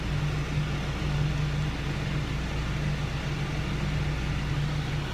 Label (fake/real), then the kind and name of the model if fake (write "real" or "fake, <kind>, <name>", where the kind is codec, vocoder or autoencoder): real